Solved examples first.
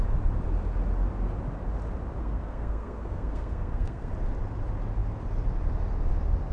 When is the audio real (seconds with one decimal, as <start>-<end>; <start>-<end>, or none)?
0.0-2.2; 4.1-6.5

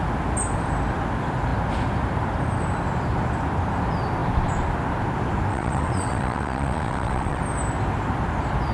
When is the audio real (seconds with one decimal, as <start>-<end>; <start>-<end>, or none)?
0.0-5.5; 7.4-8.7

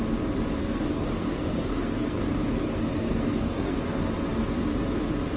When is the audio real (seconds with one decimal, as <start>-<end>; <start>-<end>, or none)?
0.0-0.6; 3.8-5.4

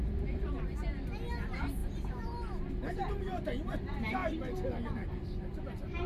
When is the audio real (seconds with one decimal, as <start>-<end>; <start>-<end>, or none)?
0.0-6.1